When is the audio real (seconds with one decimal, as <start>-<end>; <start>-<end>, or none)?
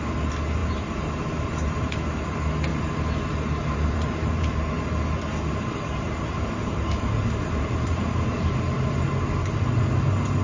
0.0-0.6; 2.2-2.7; 4.5-5.3; 9.0-10.4